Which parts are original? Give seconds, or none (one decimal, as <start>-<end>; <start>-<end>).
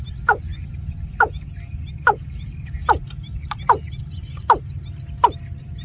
0.0-5.8